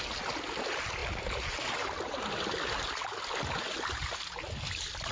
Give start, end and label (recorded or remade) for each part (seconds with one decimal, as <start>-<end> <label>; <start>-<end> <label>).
0.0-5.1 recorded